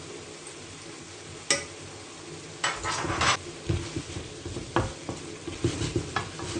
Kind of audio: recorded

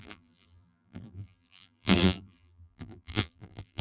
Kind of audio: remade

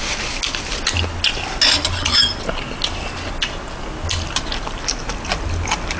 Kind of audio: recorded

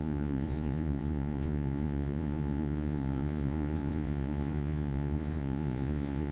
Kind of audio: remade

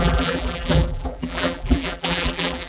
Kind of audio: remade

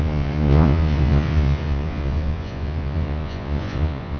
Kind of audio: remade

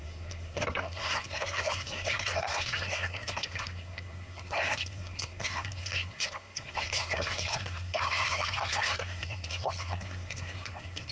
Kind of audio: remade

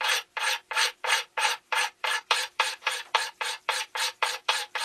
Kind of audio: remade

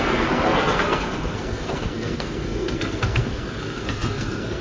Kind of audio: remade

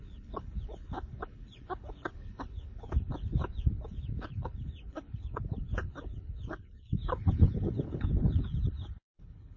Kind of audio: remade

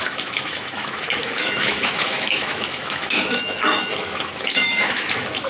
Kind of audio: remade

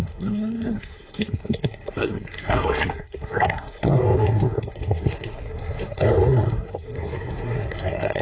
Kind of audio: remade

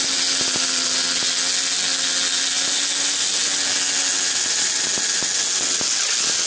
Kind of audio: recorded